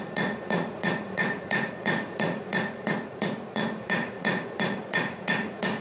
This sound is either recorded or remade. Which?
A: remade